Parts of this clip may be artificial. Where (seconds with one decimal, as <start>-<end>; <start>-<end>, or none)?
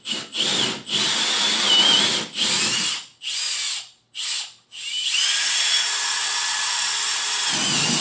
5.2-7.2